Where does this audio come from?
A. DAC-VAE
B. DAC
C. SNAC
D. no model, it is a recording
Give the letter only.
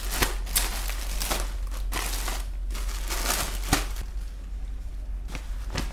D